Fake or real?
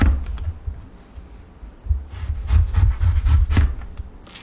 real